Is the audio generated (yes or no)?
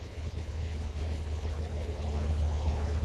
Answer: yes